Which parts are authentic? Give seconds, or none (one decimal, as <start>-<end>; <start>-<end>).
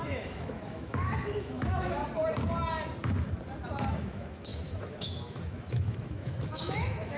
2.0-3.9